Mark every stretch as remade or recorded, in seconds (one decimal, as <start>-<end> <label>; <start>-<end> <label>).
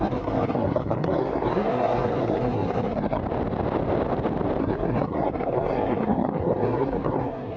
0.0-3.2 remade; 3.2-4.6 recorded; 4.6-7.6 remade